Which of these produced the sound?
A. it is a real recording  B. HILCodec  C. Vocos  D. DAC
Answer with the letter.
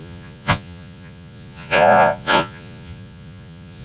C